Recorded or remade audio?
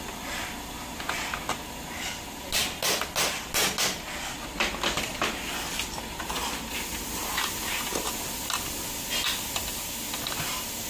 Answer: recorded